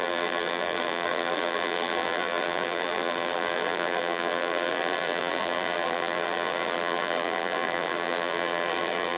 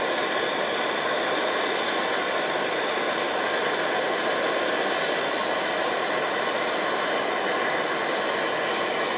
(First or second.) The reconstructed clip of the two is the first